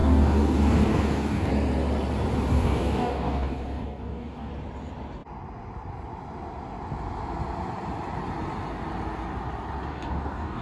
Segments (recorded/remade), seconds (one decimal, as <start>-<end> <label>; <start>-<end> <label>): 0.0-1.5 remade; 1.5-2.5 recorded; 2.5-4.5 remade; 4.5-9.9 recorded; 9.9-10.6 remade